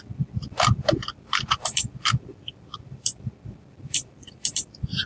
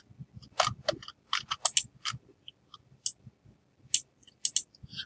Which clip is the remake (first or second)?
first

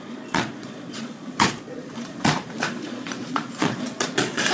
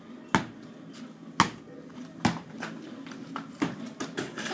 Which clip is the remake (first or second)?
first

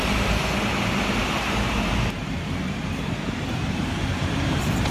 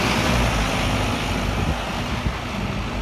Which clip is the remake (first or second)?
first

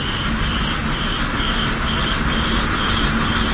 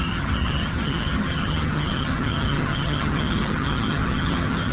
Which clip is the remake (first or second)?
second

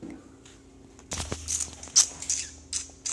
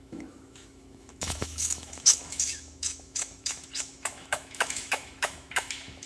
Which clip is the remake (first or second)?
second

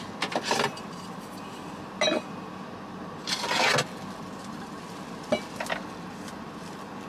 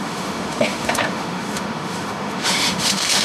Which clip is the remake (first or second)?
second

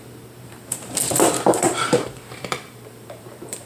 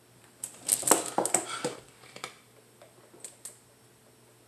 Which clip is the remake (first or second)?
first